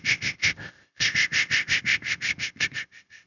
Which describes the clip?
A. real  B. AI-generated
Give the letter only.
B